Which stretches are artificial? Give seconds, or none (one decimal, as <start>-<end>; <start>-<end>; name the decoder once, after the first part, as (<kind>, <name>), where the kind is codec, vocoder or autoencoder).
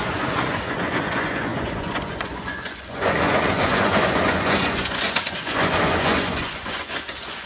0.0-7.5 (vocoder, Vocos)